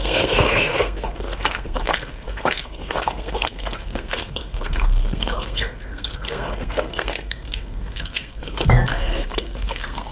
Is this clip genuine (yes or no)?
no